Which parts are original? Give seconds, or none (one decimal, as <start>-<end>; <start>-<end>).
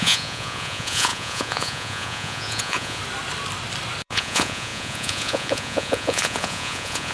3.0-4.0